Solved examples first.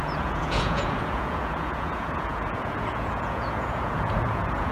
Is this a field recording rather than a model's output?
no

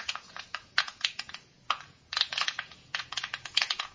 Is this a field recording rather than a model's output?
no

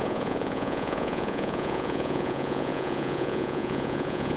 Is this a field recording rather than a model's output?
no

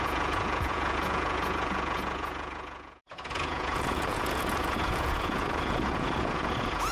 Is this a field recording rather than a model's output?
no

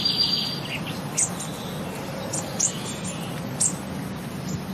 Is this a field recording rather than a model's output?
yes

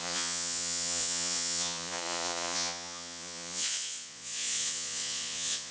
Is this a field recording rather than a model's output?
no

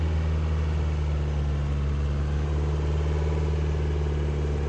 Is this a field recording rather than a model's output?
yes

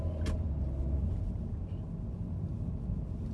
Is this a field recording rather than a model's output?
yes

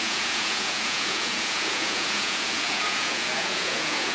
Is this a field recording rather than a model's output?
no